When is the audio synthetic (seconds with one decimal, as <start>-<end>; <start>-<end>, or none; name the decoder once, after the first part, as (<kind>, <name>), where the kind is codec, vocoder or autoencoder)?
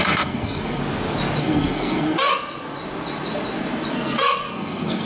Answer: 0.0-0.8 (codec, SNAC); 1.4-2.3; 3.9-5.1